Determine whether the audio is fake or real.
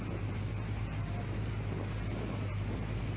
real